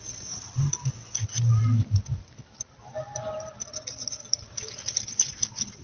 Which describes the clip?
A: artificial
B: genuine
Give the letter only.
B